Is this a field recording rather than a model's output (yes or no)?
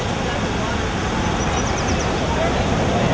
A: yes